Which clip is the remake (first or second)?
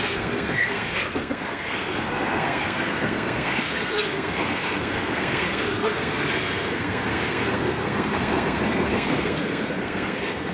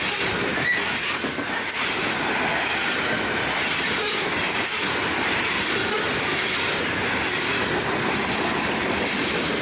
first